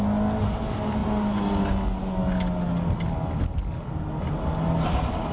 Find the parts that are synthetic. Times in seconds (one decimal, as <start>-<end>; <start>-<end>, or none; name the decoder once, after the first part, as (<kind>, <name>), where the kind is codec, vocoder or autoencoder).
none